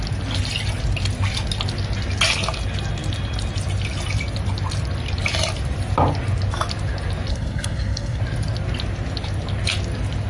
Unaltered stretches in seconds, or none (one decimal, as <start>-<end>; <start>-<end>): 0.0-7.3; 8.2-10.3